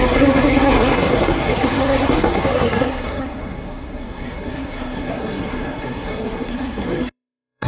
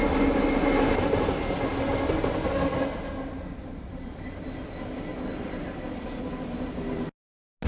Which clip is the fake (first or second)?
first